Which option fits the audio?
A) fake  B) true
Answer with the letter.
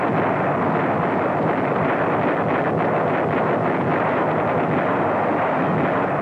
B